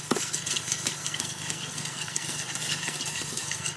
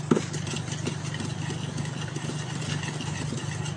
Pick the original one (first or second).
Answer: second